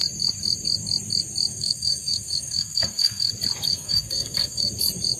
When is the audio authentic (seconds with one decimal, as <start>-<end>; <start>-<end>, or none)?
0.0-1.5; 3.3-3.7; 4.7-5.2